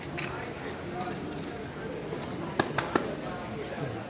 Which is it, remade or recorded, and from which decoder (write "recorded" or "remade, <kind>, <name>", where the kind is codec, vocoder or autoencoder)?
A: recorded